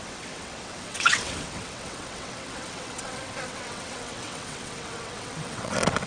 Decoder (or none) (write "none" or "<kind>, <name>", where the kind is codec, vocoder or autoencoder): vocoder, WaveNeXt